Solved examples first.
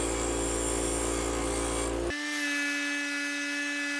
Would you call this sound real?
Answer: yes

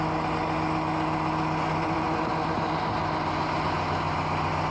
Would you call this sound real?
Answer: yes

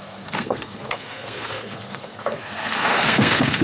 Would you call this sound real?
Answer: no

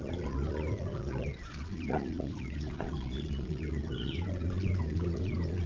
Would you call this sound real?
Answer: no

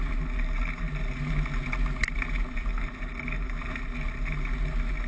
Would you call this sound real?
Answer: yes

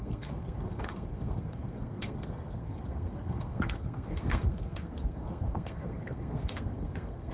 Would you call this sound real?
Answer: no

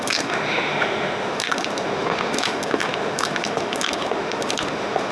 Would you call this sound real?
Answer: no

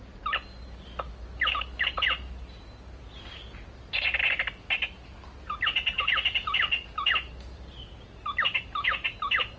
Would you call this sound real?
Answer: yes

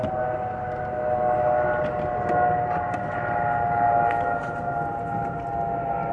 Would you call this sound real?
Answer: yes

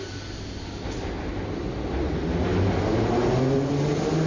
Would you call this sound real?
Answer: yes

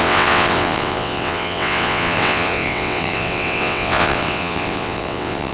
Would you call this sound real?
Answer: no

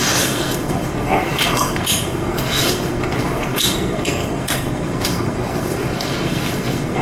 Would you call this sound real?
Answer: no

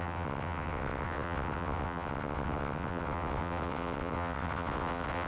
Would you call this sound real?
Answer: no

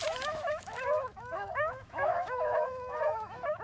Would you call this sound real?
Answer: no